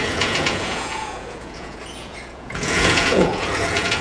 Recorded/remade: remade